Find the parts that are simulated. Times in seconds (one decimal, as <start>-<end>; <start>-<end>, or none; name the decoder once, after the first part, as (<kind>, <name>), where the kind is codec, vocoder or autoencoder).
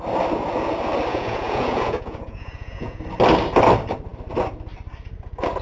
1.1-3.0 (vocoder, Vocos)